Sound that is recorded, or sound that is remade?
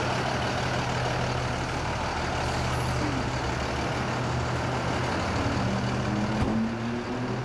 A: recorded